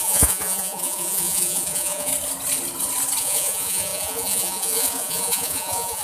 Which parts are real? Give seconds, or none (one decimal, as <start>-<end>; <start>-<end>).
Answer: 2.1-3.2